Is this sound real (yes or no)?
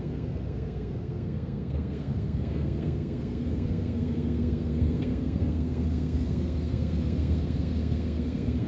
no